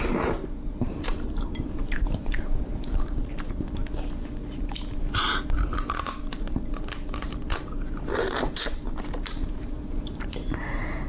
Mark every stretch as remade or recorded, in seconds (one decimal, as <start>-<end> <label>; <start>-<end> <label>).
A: 0.0-3.8 remade; 3.8-6.2 recorded; 6.2-11.1 remade